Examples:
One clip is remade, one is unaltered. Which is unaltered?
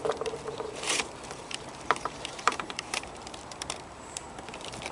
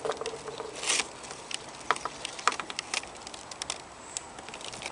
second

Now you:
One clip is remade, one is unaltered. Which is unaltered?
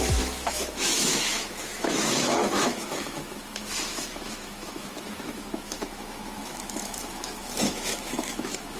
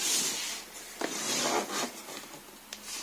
second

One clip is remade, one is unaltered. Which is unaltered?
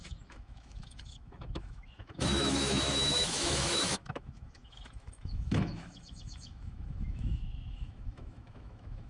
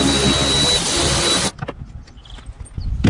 second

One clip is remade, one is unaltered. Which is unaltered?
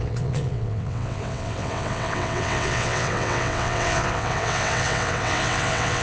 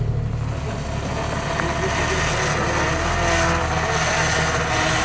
second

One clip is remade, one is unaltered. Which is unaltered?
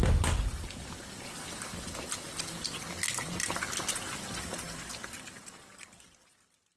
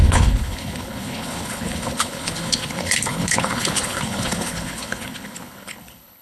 first